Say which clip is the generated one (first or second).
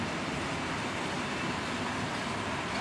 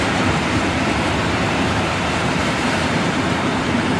second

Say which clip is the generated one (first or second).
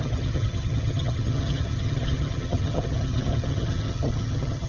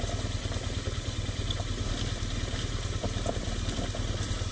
first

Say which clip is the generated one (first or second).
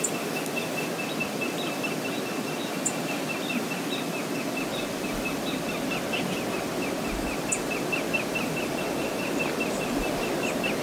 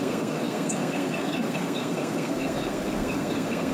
second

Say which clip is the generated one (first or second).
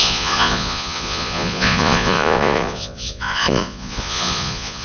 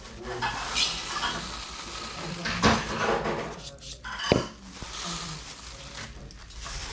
first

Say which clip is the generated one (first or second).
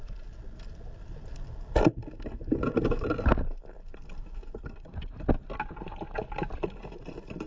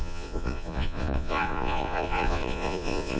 second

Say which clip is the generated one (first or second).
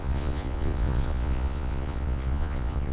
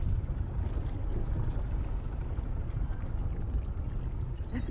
first